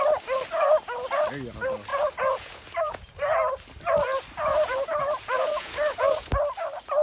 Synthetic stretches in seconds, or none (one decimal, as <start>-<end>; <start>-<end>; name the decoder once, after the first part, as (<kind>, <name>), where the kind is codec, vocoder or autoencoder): 1.9-3.1 (vocoder, Vocos); 4.5-6.3